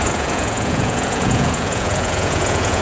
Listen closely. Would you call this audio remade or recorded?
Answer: remade